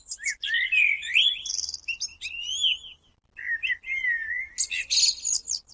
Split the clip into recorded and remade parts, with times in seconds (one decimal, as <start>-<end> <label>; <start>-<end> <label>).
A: 0.0-1.0 recorded; 1.0-1.5 remade; 1.5-5.7 recorded